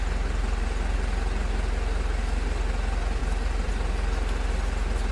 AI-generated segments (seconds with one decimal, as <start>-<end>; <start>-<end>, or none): 3.2-3.7